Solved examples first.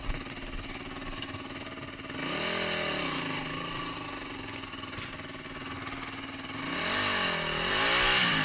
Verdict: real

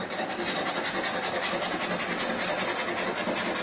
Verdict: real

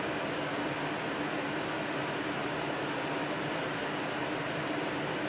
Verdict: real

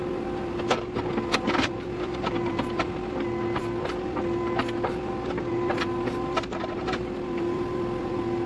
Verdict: fake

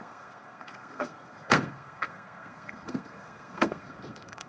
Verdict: fake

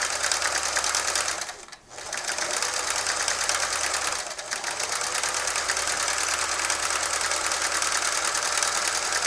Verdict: real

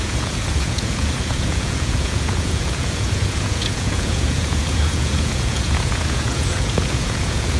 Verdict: fake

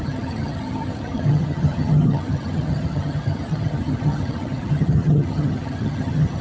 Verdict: fake